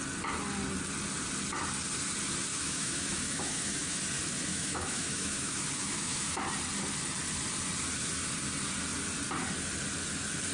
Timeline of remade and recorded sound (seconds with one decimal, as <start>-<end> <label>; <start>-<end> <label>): 0.0-2.5 recorded; 2.5-4.0 remade; 4.0-4.5 recorded; 4.5-6.4 remade; 6.4-10.5 recorded